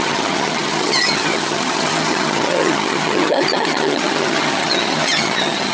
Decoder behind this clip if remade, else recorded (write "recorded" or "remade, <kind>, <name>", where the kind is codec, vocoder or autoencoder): remade, vocoder, HiFi-GAN